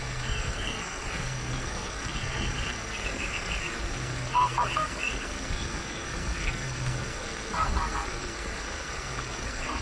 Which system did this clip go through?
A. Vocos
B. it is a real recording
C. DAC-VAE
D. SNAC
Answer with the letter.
D